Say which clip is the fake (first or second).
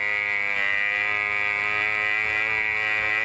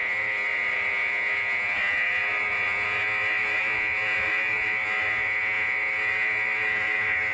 second